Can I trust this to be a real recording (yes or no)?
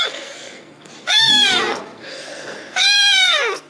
no